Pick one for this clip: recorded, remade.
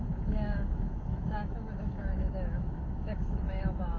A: remade